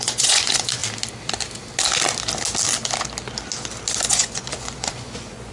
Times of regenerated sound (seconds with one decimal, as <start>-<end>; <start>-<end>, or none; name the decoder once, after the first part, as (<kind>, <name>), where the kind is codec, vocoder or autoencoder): 0.0-0.8 (vocoder, Vocos); 4.1-5.5